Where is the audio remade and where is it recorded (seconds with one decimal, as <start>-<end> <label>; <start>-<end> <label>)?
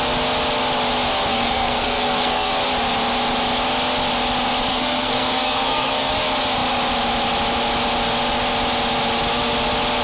0.0-1.3 recorded; 1.3-2.5 remade; 2.5-4.7 recorded; 4.7-6.1 remade; 6.1-10.0 recorded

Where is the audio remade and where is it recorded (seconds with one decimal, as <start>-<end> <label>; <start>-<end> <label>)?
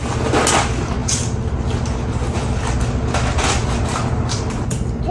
0.0-5.1 recorded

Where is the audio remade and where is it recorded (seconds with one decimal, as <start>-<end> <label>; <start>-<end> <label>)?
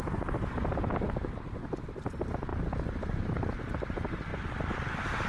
0.0-5.3 recorded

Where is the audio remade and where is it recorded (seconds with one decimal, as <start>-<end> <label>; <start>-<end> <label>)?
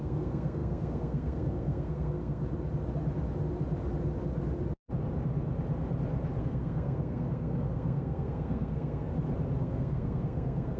0.0-2.4 remade; 2.4-6.4 recorded; 6.4-9.1 remade; 9.1-9.6 recorded; 9.6-10.8 remade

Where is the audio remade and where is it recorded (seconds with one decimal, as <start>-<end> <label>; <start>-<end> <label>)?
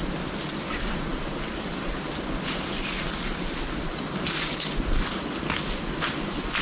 0.0-6.6 recorded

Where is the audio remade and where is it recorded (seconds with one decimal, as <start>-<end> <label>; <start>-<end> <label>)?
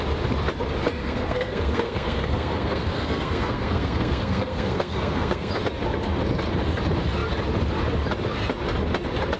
0.0-1.0 recorded; 1.0-5.5 remade; 5.5-9.4 recorded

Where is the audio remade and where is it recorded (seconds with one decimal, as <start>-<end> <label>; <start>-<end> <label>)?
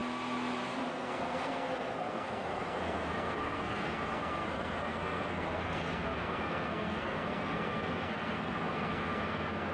0.0-0.9 recorded; 0.9-9.7 remade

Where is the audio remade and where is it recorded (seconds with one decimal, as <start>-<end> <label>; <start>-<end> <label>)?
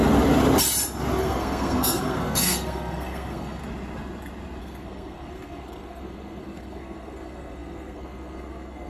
0.0-1.2 recorded; 1.2-3.6 remade; 3.6-4.6 recorded; 4.6-8.9 remade